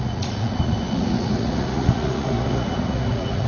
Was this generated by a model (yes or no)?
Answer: yes